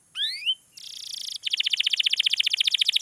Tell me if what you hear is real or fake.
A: real